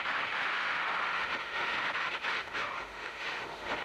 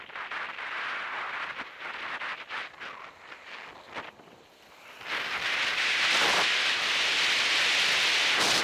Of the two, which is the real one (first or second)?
second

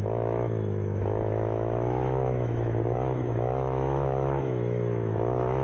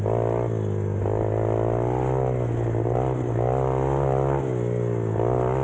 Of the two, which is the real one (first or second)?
second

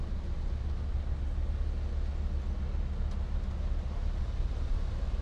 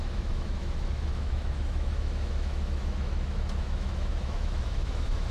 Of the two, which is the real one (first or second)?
first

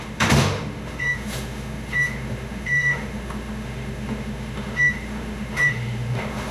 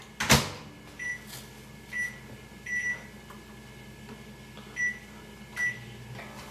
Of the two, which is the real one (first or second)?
second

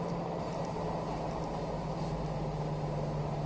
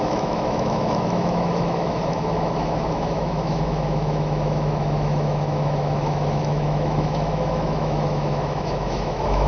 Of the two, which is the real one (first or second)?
first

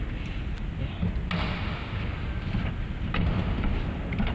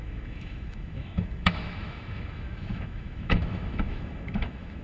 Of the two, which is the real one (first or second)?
first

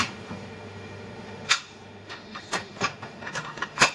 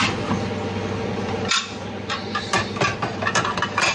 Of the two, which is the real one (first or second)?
second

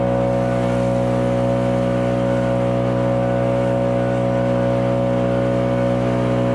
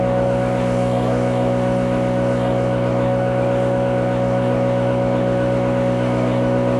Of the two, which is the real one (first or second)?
first